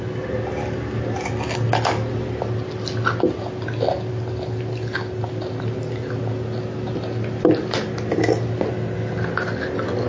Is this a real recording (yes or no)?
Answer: yes